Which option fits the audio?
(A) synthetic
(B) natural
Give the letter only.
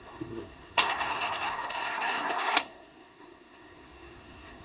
A